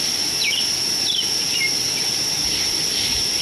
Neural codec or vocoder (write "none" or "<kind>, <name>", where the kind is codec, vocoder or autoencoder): none